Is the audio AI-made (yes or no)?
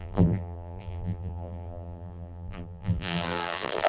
yes